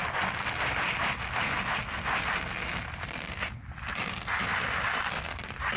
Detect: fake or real real